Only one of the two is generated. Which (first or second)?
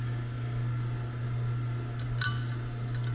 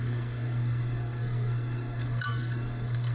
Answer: second